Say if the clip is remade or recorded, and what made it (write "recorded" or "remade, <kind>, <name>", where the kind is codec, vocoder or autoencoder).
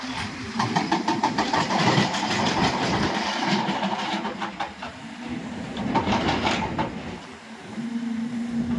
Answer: remade, vocoder, BigVGAN v2